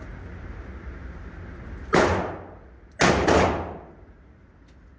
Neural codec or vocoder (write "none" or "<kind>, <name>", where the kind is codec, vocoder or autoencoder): none